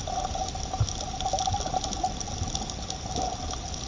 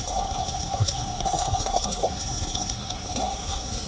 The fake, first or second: second